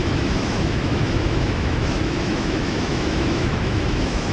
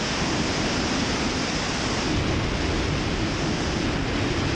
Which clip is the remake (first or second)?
first